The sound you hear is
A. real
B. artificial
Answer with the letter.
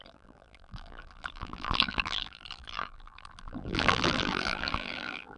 B